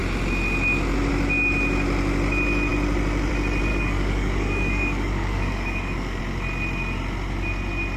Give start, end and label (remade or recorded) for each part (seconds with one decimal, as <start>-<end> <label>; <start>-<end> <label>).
0.0-3.7 recorded; 3.7-6.2 remade; 6.2-8.0 recorded

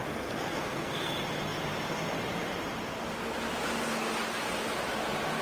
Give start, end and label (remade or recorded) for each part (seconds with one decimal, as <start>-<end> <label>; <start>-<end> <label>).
0.0-1.1 remade; 1.1-5.4 recorded